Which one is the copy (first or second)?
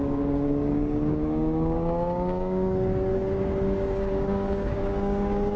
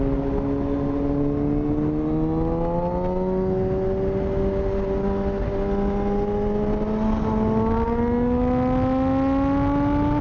first